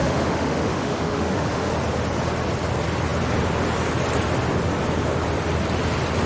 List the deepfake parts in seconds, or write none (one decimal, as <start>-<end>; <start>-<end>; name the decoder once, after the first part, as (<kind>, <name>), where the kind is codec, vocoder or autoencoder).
0.0-1.7 (autoencoder, DAC-VAE)